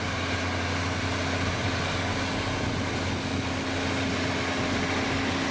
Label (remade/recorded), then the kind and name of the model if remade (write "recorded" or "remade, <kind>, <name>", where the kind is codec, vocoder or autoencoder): recorded